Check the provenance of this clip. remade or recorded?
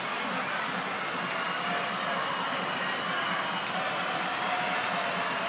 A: recorded